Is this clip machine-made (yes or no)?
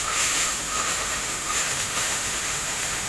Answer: yes